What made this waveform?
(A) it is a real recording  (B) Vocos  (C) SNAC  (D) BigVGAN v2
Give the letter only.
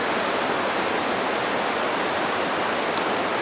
A